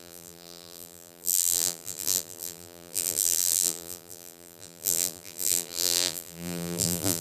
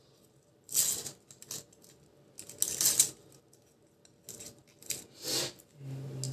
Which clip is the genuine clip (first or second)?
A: second